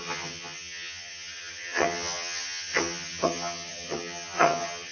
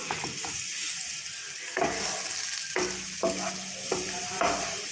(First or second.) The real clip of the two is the second